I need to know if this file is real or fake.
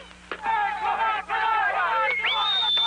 real